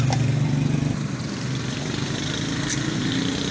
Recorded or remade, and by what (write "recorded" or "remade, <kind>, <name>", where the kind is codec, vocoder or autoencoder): remade, vocoder, BigVGAN v2